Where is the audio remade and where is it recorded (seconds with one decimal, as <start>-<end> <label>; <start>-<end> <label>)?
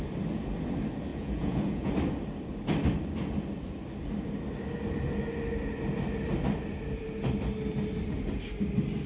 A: 0.0-1.1 recorded; 1.1-1.9 remade; 1.9-9.1 recorded